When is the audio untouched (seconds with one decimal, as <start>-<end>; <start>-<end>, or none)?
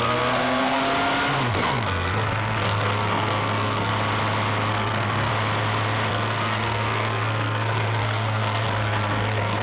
0.8-1.5; 3.9-4.7; 5.3-6.1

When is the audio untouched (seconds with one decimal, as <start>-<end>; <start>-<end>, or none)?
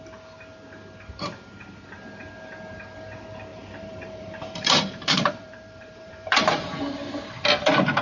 0.0-3.5; 6.8-8.0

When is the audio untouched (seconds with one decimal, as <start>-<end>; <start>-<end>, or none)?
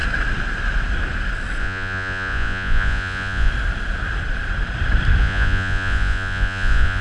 0.0-1.6; 3.5-5.2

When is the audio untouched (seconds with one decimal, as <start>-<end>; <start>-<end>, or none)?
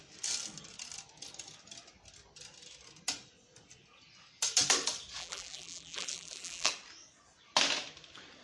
0.0-5.2; 6.7-8.4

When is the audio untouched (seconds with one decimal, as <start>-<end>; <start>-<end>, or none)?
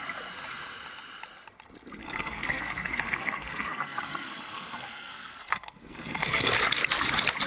0.0-2.0; 6.5-7.5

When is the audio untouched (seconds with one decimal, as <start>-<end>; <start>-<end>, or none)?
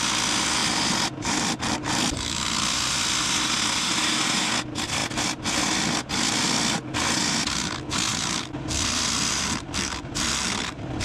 0.0-11.0